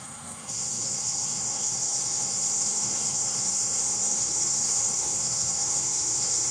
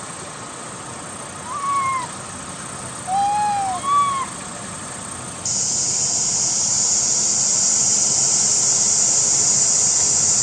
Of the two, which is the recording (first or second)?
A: second